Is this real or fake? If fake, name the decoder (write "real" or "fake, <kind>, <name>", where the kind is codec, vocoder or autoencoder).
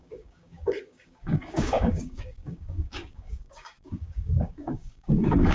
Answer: fake, codec, DAC